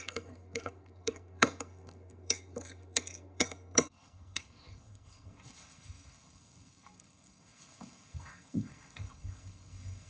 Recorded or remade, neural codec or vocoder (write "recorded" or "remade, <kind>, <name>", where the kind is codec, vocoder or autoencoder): remade, codec, SNAC